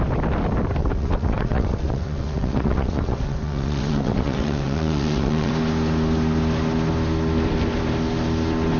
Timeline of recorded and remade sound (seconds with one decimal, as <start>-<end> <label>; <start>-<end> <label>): 0.0-0.8 recorded; 0.8-5.5 remade; 5.5-8.8 recorded